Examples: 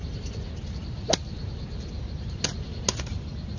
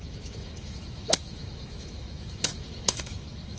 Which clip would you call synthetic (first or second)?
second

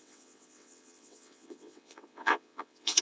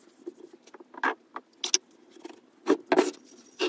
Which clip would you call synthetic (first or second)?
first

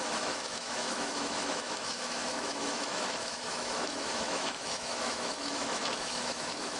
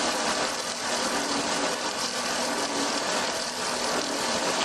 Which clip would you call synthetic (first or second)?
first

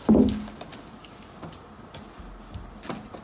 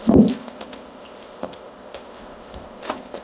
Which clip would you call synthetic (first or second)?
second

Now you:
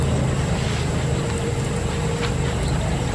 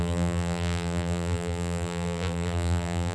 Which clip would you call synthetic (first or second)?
second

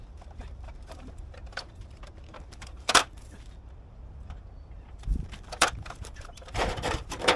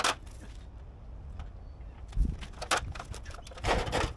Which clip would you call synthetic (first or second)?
first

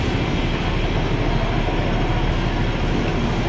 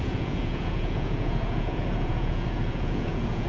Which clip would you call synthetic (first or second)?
second